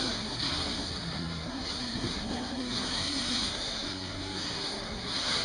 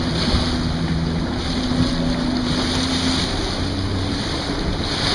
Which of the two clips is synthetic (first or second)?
first